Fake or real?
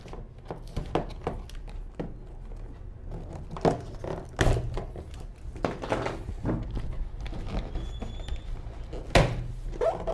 real